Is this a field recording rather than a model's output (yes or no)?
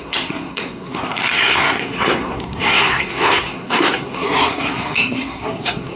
no